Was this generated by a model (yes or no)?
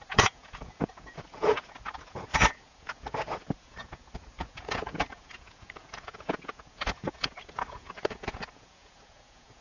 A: yes